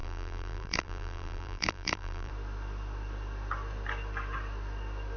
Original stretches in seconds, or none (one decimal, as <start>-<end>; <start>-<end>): 2.3-5.2

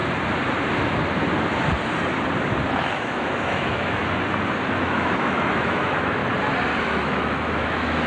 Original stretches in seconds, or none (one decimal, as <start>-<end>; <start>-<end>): 0.0-2.8; 4.0-4.7; 6.2-6.8

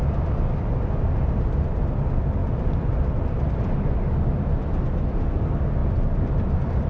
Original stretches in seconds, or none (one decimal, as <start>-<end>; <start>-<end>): 0.0-2.4; 3.7-6.9

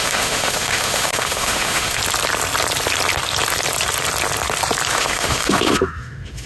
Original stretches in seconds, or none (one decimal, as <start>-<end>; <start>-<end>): 2.0-4.9

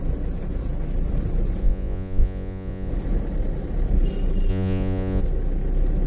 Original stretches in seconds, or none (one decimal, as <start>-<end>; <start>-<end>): 0.0-1.6; 2.9-4.5; 5.2-6.1